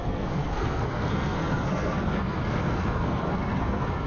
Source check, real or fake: fake